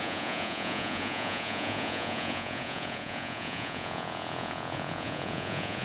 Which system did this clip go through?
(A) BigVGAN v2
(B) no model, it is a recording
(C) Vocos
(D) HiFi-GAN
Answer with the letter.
C